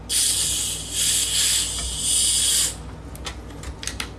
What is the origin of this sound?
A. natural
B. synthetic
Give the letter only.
A